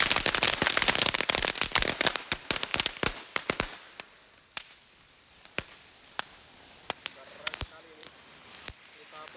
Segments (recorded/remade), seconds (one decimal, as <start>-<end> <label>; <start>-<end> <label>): 0.0-2.7 recorded; 2.7-7.5 remade; 7.5-8.0 recorded; 8.0-9.4 remade